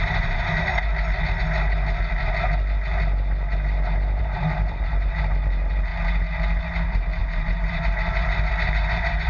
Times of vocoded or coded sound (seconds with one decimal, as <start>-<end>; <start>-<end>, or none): 0.0-0.7; 4.2-5.9; 6.6-9.3